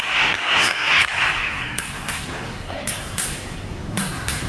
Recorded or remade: remade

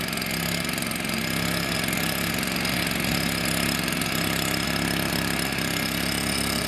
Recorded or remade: recorded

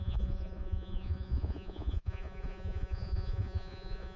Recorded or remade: remade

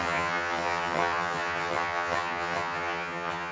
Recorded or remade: remade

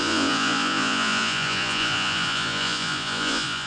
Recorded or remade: remade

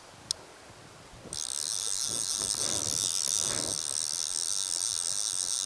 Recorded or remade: recorded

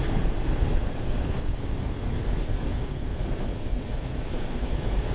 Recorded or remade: remade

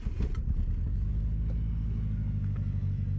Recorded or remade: recorded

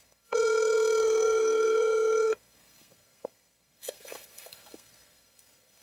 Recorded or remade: remade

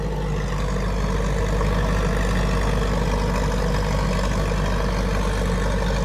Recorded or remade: recorded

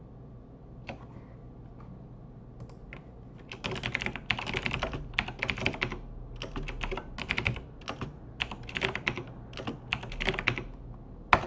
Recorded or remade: recorded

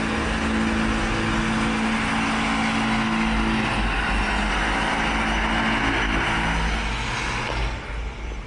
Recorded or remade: recorded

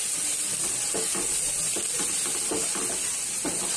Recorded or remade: recorded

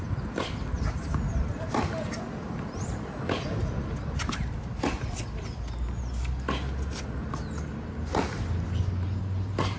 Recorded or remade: recorded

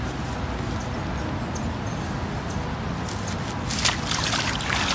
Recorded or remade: recorded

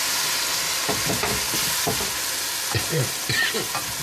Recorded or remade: recorded